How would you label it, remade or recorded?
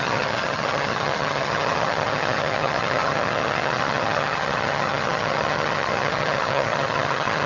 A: remade